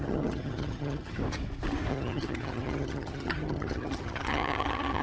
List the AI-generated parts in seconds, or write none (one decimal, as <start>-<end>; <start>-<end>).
0.0-1.2; 1.9-5.0